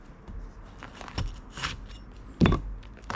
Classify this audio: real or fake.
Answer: real